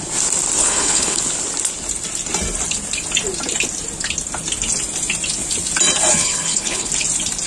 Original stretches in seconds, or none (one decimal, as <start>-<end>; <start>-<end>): 0.0-0.6; 1.2-6.2; 6.9-7.5